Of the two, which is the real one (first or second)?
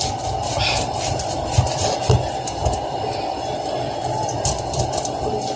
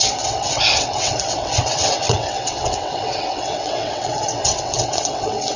first